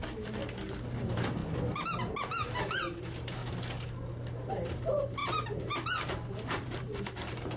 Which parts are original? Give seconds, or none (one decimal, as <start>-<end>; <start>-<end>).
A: 0.4-1.0; 1.4-2.5; 3.4-4.5